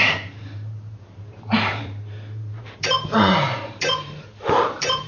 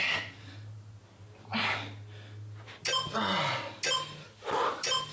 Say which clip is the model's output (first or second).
first